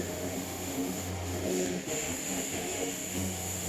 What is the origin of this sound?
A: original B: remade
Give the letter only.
B